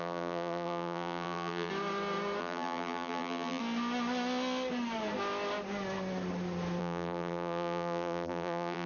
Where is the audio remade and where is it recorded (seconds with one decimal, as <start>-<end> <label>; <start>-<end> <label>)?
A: 0.0-1.7 remade; 1.7-2.4 recorded; 2.4-3.6 remade; 3.6-6.8 recorded; 6.8-8.9 remade